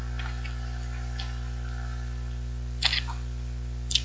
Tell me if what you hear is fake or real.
real